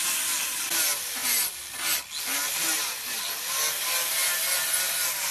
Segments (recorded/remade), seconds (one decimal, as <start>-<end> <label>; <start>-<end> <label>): 0.0-5.3 recorded